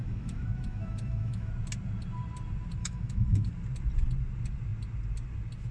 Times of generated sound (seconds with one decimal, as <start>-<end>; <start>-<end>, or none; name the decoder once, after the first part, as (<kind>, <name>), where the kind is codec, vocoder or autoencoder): 0.0-1.5 (autoencoder, DAC-VAE); 2.8-3.5